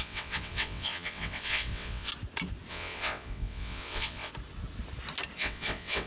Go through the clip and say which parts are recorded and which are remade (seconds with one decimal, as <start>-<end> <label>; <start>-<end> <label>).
0.0-2.1 remade; 2.1-2.7 recorded; 2.7-4.3 remade; 4.3-5.4 recorded; 5.4-6.1 remade